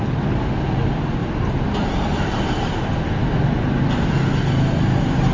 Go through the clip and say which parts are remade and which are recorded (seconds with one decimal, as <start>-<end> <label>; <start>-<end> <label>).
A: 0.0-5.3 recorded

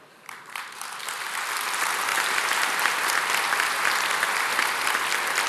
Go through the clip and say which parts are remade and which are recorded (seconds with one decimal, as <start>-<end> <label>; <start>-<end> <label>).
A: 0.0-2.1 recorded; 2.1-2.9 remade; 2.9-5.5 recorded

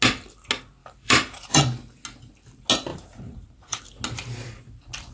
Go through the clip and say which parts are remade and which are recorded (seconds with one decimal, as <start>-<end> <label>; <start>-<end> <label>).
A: 0.0-0.8 recorded; 0.8-1.6 remade; 1.6-2.9 recorded; 2.9-3.8 remade; 3.8-5.1 recorded

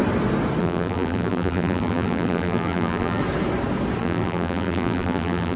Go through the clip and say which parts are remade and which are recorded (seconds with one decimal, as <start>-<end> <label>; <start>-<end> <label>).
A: 0.0-0.6 recorded; 0.6-3.2 remade; 3.2-4.0 recorded; 4.0-5.6 remade

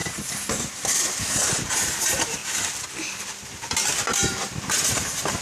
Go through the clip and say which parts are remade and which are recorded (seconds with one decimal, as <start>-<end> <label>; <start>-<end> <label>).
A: 0.0-2.4 remade; 2.4-4.1 recorded; 4.1-5.4 remade

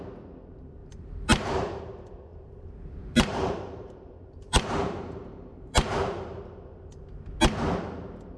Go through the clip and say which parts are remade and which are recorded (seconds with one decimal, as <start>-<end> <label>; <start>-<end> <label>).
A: 0.0-0.8 recorded; 0.8-1.8 remade; 1.8-2.3 recorded; 2.3-6.4 remade; 6.4-8.4 recorded

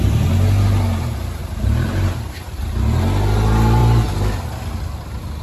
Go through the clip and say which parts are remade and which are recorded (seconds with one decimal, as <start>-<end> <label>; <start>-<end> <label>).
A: 0.0-1.4 recorded; 1.4-2.7 remade; 2.7-5.4 recorded